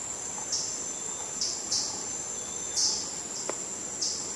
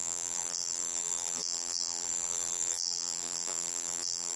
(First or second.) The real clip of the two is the first